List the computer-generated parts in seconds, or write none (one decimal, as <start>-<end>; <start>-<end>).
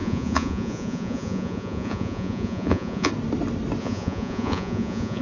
0.0-3.1; 3.8-5.2